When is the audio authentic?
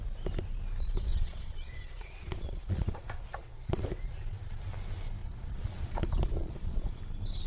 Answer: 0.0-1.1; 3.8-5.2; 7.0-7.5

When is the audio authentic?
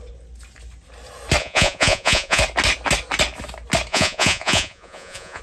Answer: 0.0-1.4; 2.4-3.9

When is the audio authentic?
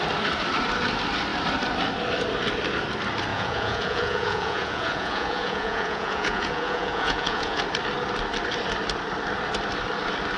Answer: 0.0-3.3; 7.6-10.4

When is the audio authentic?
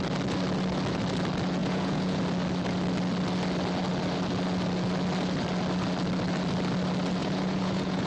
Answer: 0.0-1.6; 2.2-7.2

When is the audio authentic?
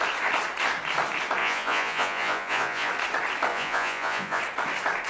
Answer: 0.0-1.4; 2.9-3.5; 4.4-5.1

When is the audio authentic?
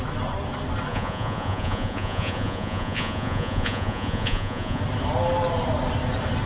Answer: 0.0-0.9; 4.8-6.5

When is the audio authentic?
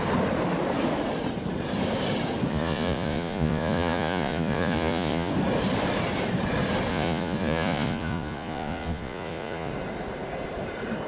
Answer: 0.0-2.5; 5.3-6.9; 9.7-11.1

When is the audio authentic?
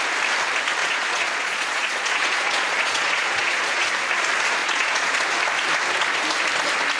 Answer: 0.0-0.8; 3.9-4.6; 5.2-7.0